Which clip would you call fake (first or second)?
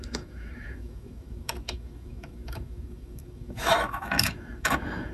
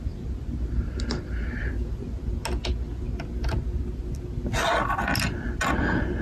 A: first